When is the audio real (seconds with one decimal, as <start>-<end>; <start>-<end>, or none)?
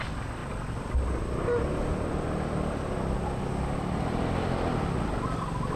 0.0-5.8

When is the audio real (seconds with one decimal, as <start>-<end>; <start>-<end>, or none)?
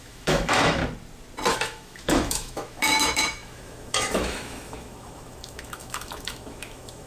0.8-1.5